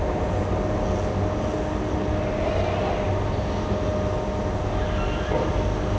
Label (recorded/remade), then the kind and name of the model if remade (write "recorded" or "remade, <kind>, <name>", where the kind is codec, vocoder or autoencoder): recorded